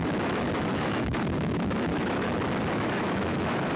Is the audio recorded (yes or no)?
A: no